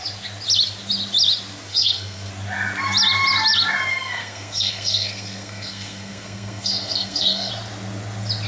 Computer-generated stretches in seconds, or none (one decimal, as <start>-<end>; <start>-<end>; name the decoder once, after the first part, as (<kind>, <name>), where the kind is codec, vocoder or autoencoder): 1.7-2.3 (codec, SNAC); 3.9-7.5